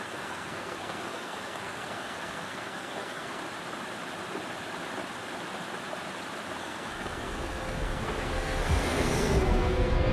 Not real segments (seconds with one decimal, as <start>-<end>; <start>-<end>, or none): 0.0-3.4; 6.6-10.1